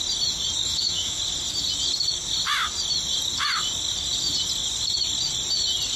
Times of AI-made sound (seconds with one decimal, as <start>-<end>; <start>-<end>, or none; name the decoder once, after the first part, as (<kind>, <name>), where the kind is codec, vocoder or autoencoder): 0.6-1.2 (autoencoder, DAC-VAE)